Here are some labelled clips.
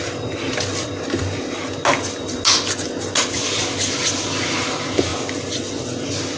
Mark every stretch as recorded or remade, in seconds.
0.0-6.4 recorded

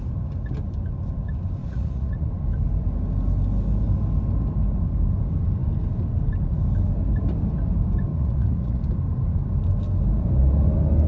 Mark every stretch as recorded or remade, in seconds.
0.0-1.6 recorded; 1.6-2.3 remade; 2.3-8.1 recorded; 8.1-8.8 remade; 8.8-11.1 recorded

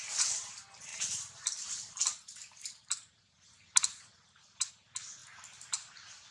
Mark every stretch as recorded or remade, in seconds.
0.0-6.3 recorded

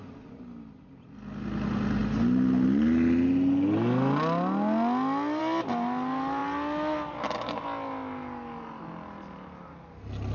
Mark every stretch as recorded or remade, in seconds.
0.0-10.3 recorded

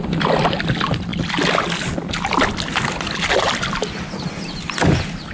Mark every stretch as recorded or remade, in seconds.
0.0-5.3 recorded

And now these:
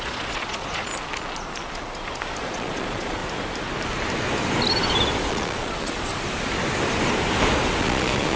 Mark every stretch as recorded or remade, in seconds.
0.0-0.9 remade; 0.9-2.4 recorded; 2.4-3.2 remade; 3.2-5.3 recorded; 5.3-6.1 remade; 6.1-7.8 recorded; 7.8-8.4 remade

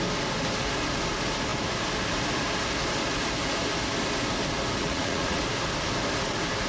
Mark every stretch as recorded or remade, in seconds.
0.0-4.8 recorded; 4.8-5.4 remade; 5.4-6.7 recorded

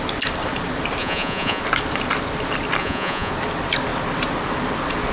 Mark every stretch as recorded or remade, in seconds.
0.0-1.0 recorded; 1.0-1.6 remade; 1.6-2.8 recorded; 2.8-3.3 remade; 3.3-5.1 recorded